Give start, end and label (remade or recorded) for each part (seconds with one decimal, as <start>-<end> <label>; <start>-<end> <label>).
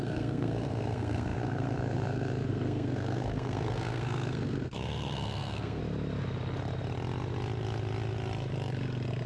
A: 0.0-5.8 remade; 5.8-9.3 recorded